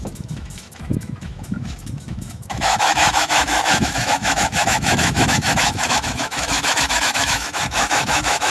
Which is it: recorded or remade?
remade